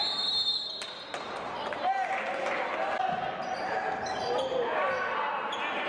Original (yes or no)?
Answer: yes